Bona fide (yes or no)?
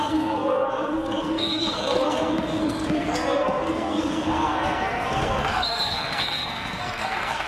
no